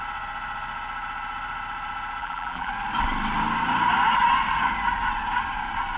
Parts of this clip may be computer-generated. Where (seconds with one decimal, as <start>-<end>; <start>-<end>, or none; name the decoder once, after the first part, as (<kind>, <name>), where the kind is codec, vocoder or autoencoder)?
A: 2.2-2.7 (vocoder, BigVGAN v2)